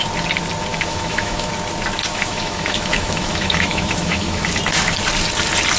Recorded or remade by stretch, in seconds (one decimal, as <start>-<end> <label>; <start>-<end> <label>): 0.0-0.7 recorded; 0.7-1.5 remade; 1.5-2.1 recorded; 2.1-4.5 remade; 4.5-5.8 recorded